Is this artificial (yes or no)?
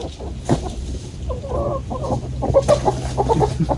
no